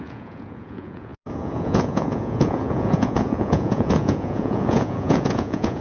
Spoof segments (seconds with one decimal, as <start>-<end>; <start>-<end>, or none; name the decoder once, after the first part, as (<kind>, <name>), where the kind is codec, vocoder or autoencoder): 0.0-5.8 (vocoder, Vocos)